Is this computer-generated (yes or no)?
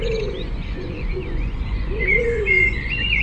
yes